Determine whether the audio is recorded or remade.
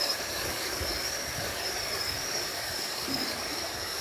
remade